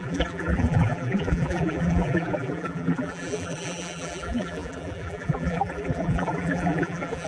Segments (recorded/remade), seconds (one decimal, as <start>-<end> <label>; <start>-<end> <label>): 0.0-7.3 remade